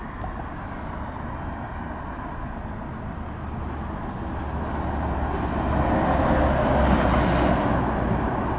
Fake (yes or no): no